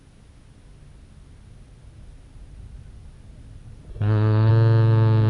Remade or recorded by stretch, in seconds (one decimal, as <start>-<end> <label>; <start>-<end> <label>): 0.0-3.9 recorded; 3.9-4.5 remade; 4.5-5.3 recorded